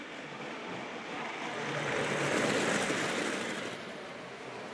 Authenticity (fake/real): real